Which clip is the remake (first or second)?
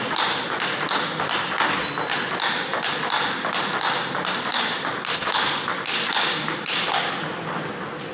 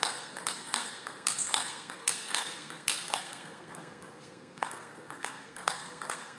second